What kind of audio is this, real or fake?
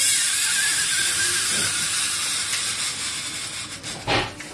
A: real